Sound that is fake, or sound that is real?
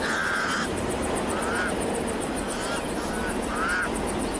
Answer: real